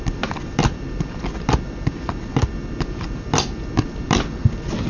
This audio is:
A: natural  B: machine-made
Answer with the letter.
A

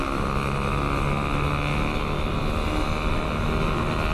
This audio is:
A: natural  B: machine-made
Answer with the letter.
A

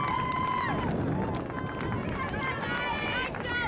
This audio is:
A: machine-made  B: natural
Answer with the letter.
B